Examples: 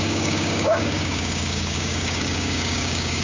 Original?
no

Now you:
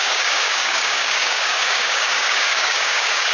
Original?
no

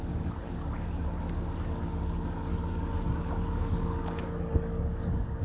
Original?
no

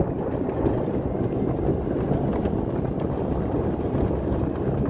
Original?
yes